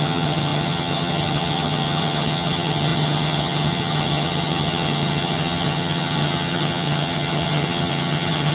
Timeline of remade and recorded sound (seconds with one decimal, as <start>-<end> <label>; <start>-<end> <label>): 0.0-8.5 remade